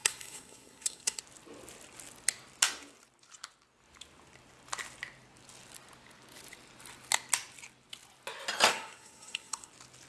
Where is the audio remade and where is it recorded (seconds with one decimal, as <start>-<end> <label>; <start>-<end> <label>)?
0.0-1.2 remade; 1.2-8.7 recorded; 8.7-9.7 remade; 9.7-10.1 recorded

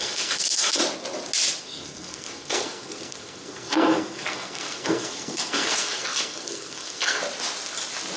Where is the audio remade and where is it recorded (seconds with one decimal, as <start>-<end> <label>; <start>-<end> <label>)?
0.0-0.8 remade; 0.8-1.6 recorded; 1.6-7.2 remade; 7.2-8.2 recorded

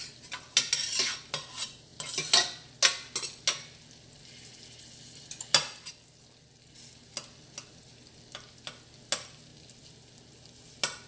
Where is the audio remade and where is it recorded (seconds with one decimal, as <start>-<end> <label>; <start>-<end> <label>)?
0.0-11.1 recorded

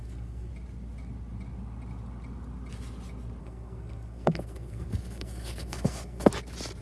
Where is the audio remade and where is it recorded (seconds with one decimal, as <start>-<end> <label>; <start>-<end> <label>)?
0.0-0.5 remade; 0.5-3.4 recorded; 3.4-6.3 remade; 6.3-6.8 recorded

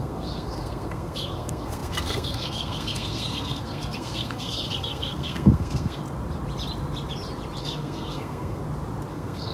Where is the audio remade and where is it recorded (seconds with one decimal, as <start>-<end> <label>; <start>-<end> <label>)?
0.0-6.0 remade; 6.0-7.6 recorded; 7.6-8.6 remade; 8.6-9.1 recorded; 9.1-9.5 remade

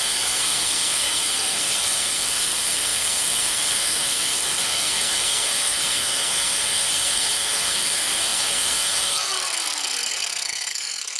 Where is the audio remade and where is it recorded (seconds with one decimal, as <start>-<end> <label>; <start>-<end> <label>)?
0.0-11.2 remade